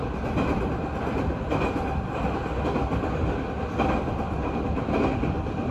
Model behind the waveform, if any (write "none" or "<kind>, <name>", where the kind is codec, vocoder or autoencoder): none